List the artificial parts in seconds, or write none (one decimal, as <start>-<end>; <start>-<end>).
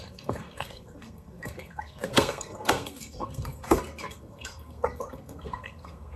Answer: 0.0-6.2